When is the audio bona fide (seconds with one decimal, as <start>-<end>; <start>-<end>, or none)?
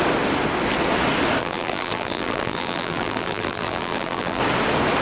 0.0-1.4; 4.4-5.0